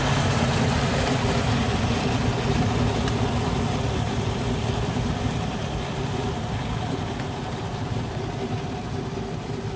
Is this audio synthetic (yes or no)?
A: yes